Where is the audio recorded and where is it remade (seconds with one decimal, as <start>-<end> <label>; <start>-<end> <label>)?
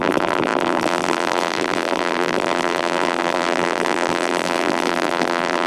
0.0-5.7 remade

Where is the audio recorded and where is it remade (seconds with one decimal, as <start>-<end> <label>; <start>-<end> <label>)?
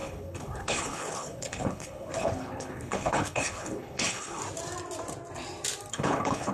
0.0-4.4 remade; 4.4-5.9 recorded; 5.9-6.5 remade